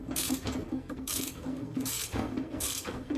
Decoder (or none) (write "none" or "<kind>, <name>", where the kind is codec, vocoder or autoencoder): codec, SNAC